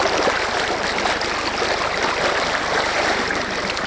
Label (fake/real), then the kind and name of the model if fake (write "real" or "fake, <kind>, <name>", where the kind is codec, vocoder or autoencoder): real